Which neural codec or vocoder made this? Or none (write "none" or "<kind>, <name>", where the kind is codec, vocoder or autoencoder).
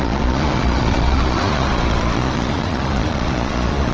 vocoder, Vocos